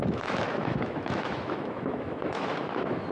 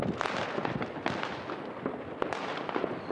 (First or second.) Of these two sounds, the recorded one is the second